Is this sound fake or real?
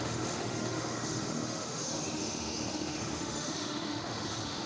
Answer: fake